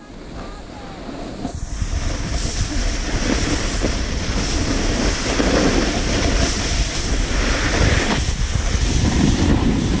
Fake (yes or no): no